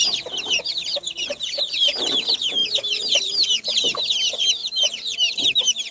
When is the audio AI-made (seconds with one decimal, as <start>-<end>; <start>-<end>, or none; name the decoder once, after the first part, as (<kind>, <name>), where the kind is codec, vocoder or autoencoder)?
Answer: 4.6-5.4 (vocoder, BigVGAN v2)